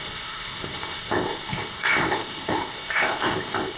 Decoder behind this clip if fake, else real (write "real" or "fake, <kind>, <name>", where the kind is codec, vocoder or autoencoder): fake, codec, ZipCodec